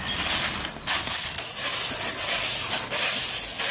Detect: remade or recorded recorded